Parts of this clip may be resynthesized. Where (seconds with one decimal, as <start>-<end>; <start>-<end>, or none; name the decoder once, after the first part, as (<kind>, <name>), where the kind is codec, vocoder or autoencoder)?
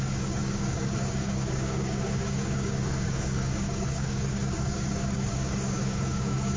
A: 0.0-6.6 (codec, DAC)